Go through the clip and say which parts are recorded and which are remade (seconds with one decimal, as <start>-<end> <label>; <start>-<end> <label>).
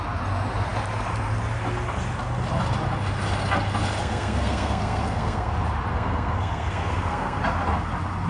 0.0-4.0 recorded; 4.0-5.5 remade; 5.5-5.9 recorded; 5.9-7.4 remade; 7.4-8.3 recorded